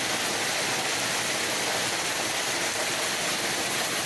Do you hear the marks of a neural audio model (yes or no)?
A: no